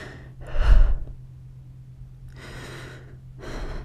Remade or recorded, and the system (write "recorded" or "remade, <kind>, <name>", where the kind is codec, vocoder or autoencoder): recorded